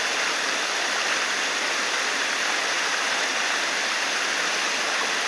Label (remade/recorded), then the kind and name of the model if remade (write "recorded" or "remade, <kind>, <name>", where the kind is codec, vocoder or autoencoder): recorded